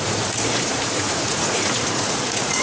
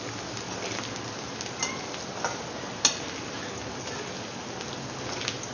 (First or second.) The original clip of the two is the second